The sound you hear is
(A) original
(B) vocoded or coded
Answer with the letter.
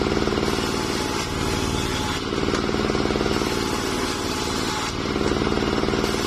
A